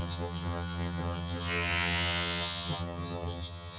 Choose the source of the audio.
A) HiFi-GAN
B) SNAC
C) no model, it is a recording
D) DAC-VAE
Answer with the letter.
A